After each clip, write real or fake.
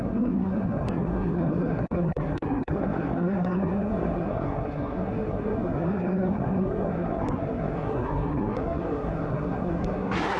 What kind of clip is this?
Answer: fake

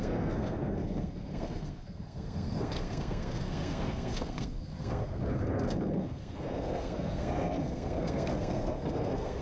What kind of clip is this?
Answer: fake